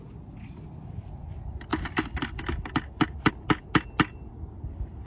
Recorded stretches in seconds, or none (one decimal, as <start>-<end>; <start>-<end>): 0.0-5.1